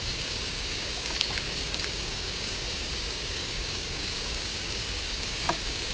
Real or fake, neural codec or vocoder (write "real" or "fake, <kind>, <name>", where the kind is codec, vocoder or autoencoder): fake, codec, DAC